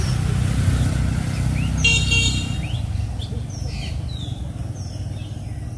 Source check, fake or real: real